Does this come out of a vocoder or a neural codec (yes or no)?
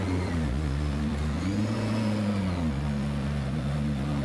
yes